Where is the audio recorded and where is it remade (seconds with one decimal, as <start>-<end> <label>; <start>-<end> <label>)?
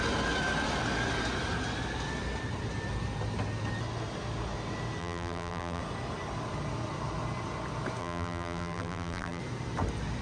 0.0-5.0 recorded; 5.0-5.8 remade; 5.8-8.0 recorded; 8.0-9.4 remade; 9.4-10.2 recorded